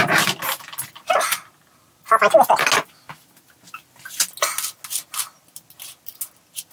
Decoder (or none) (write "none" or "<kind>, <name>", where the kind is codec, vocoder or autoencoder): none